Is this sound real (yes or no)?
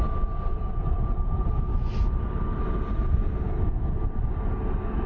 yes